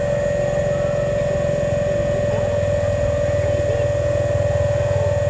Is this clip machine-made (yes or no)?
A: no